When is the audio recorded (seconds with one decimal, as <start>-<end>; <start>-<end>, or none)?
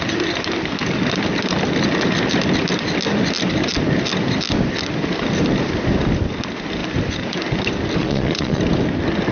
0.0-8.0; 8.6-9.3